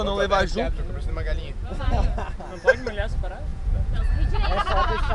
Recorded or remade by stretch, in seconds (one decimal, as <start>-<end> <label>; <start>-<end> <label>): 0.0-3.5 recorded; 3.5-5.1 remade